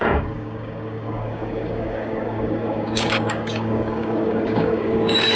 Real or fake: fake